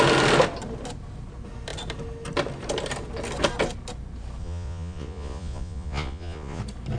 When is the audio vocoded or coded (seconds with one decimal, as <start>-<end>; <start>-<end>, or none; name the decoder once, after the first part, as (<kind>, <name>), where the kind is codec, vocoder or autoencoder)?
4.4-6.6 (vocoder, Vocos)